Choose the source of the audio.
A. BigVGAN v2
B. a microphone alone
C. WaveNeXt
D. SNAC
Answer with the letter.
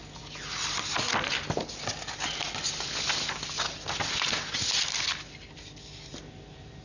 B